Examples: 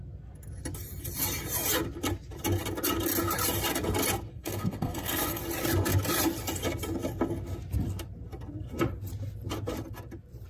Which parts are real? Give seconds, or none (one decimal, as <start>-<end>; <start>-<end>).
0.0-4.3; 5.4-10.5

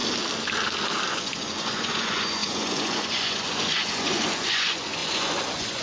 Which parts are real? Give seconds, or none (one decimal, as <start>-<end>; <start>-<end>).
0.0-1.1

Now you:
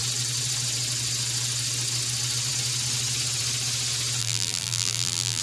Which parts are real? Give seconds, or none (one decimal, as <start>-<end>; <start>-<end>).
0.0-4.2

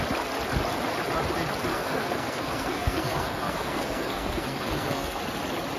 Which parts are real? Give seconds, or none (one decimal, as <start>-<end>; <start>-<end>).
0.0-1.7; 5.2-5.8

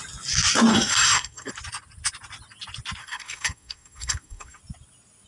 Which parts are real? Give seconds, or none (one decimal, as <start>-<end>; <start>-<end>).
0.0-0.7; 1.5-3.0; 4.6-5.3

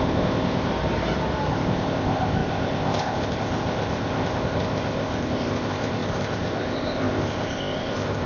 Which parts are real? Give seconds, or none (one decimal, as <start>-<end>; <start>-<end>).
0.7-1.5